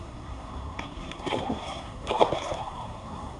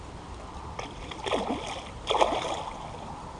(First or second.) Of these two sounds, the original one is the second